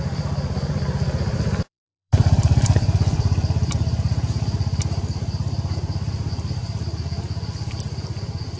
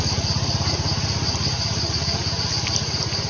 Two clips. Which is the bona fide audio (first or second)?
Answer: second